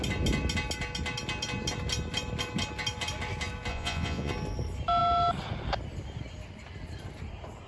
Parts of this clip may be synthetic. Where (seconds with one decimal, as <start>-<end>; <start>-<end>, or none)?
3.7-4.3